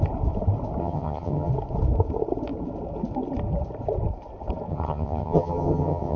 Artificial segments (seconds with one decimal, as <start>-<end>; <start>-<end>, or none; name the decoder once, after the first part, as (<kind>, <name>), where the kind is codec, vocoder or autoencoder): 0.8-1.5 (vocoder, HiFi-GAN); 4.7-6.2